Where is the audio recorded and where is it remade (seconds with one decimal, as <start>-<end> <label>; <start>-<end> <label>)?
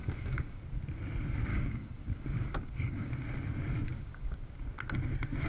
0.0-0.6 remade; 0.6-1.5 recorded; 1.5-3.1 remade; 3.1-3.9 recorded; 3.9-4.5 remade; 4.5-5.5 recorded